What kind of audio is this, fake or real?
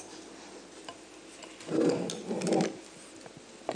real